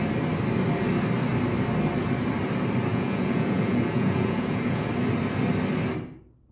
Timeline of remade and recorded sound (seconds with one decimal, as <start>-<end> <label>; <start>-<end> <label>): 0.0-2.9 recorded; 2.9-4.9 remade; 4.9-6.5 recorded